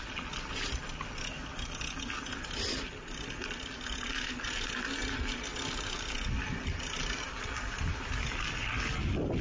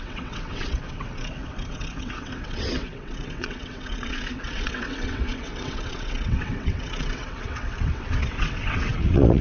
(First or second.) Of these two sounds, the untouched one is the first